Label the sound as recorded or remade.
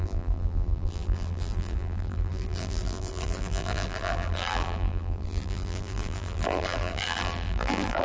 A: remade